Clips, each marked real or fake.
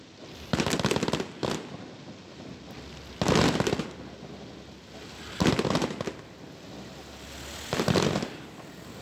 real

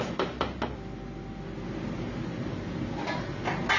real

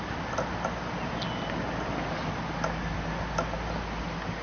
real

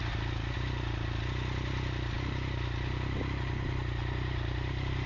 real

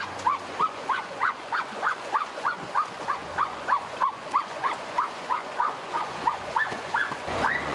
fake